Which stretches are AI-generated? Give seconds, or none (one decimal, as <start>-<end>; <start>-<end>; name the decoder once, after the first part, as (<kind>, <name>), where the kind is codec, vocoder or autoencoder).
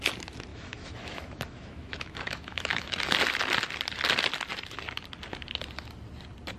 0.5-3.0 (autoencoder, DAC-VAE)